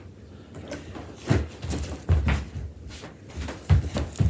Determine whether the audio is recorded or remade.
recorded